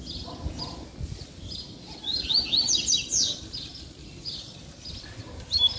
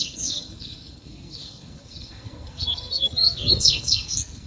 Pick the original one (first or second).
first